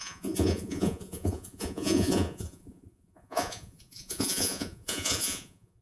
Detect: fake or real fake